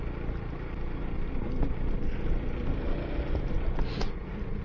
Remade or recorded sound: recorded